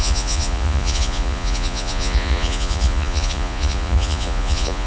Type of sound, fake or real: fake